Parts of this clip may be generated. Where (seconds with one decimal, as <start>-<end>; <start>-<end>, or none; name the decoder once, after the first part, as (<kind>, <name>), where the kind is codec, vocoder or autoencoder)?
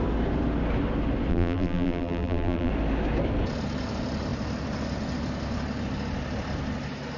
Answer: 1.3-2.7 (vocoder, BigVGAN v2)